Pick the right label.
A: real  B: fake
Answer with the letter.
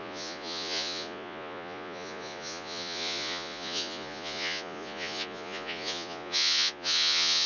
B